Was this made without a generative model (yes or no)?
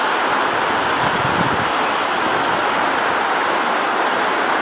yes